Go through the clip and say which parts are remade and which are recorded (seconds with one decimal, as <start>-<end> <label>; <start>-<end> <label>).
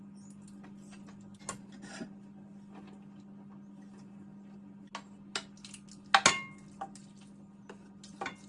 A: 0.0-8.5 recorded